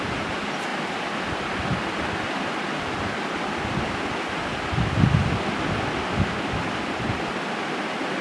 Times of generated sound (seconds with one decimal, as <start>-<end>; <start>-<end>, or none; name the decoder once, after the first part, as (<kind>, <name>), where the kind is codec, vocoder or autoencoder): none